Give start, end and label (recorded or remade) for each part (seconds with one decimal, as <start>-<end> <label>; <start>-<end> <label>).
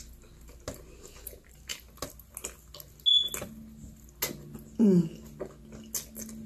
0.0-6.5 recorded